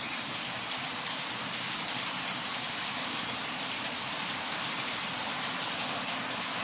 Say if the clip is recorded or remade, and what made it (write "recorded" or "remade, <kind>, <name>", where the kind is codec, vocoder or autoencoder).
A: remade, vocoder, BigVGAN v2